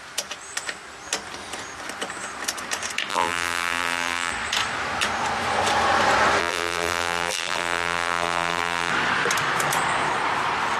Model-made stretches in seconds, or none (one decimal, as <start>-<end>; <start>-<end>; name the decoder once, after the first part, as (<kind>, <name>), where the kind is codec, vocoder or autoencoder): 3.1-4.3 (vocoder, BigVGAN v2); 6.4-8.9